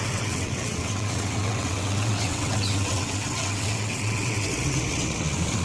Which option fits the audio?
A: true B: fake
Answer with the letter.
B